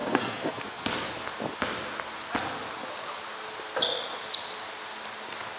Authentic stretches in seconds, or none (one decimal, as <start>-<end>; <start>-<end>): 0.8-5.6